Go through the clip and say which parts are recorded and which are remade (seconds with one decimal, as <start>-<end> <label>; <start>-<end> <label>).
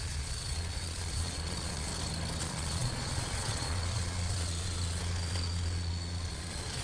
0.0-1.9 remade; 1.9-2.4 recorded; 2.4-6.8 remade